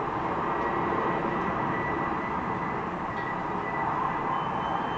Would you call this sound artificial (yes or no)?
no